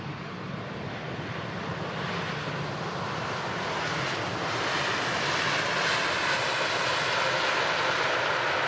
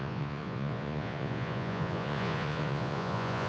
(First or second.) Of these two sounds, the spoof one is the second